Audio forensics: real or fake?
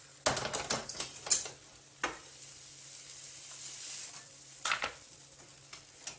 real